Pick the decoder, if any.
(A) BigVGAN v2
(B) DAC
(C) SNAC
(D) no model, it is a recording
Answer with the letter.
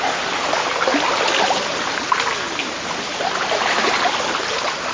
D